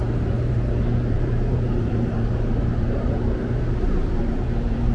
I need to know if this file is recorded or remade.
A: remade